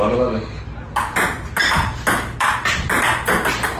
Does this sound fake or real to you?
real